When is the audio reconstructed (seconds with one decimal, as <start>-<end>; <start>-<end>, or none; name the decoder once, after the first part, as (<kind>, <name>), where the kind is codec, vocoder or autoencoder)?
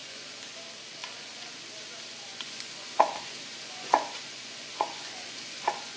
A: 0.0-0.6 (vocoder, Vocos); 1.0-1.7; 2.3-6.0